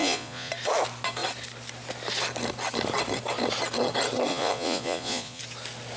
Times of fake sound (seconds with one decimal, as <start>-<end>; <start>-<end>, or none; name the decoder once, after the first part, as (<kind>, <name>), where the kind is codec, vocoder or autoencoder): 0.0-0.5 (vocoder, Vocos); 4.3-5.4